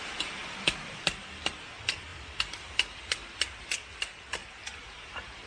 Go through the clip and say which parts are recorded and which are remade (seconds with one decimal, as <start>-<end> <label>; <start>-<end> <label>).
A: 0.0-0.4 recorded; 0.4-1.5 remade; 1.5-2.1 recorded; 2.1-3.0 remade; 3.0-4.4 recorded; 4.4-5.5 remade